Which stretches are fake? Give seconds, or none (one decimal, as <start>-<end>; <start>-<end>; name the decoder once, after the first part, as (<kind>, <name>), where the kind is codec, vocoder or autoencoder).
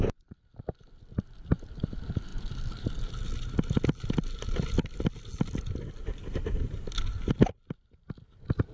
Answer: none